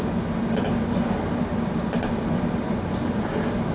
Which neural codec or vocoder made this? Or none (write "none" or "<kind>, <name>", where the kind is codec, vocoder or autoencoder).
none